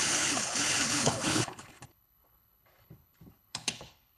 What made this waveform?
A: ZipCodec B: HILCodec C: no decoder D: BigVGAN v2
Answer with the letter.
B